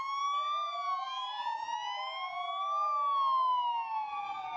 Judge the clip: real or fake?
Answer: real